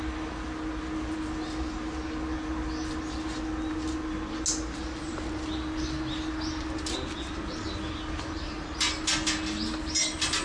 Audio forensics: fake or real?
real